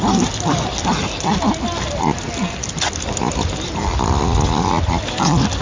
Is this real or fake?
real